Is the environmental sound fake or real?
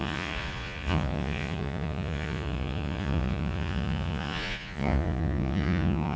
fake